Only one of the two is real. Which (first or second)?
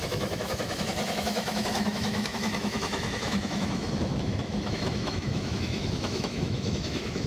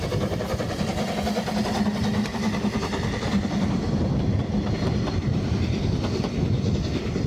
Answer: second